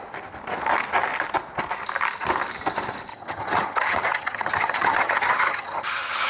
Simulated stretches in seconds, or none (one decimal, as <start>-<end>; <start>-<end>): 3.1-6.3